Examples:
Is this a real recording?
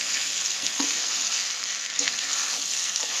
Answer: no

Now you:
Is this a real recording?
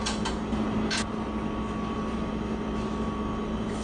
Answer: yes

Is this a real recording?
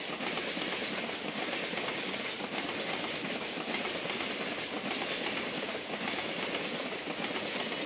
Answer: yes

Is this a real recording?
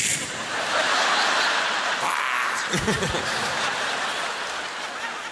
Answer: yes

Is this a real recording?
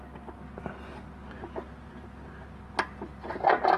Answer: yes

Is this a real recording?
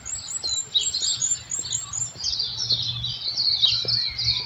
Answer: yes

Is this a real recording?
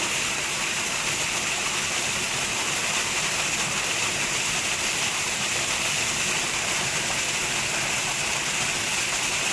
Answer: yes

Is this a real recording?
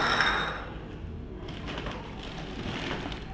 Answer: yes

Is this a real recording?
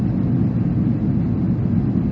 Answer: yes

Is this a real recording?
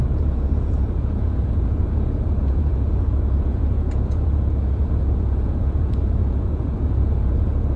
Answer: no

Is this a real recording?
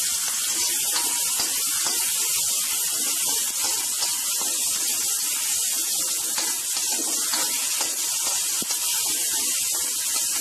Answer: yes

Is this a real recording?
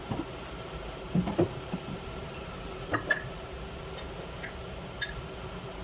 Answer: yes